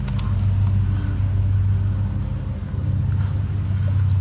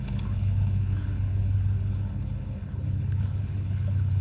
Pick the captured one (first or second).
first